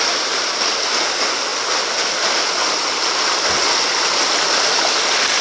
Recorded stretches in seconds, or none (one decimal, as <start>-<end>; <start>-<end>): 0.0-5.4